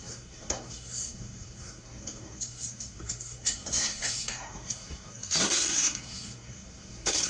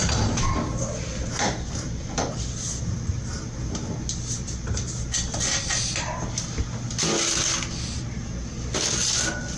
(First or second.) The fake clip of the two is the first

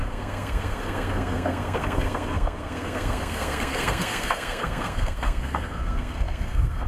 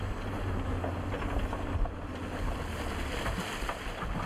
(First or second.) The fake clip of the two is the first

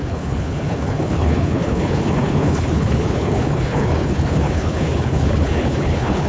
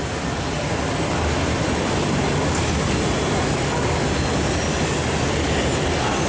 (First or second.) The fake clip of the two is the first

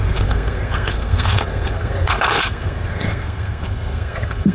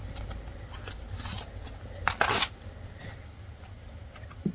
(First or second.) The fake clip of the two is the first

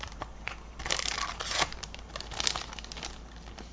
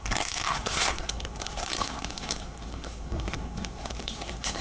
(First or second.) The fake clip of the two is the second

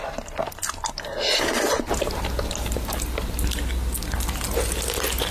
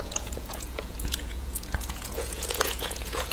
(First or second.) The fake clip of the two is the second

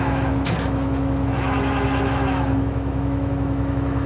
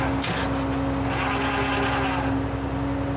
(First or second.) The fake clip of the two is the first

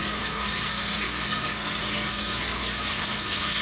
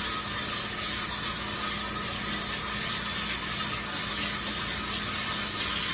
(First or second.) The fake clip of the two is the first